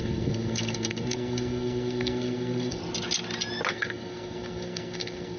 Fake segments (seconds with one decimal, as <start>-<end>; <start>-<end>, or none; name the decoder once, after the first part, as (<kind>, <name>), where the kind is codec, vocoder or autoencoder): 0.0-2.8 (codec, SNAC); 3.7-5.4